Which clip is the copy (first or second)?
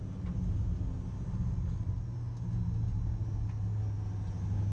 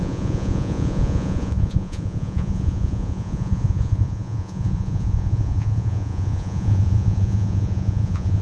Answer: second